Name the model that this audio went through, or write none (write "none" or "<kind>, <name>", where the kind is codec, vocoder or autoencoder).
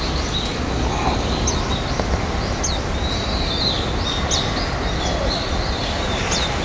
none